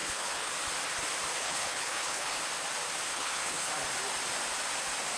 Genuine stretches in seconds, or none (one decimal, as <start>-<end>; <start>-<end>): 0.5-1.4; 2.4-3.1; 3.7-5.2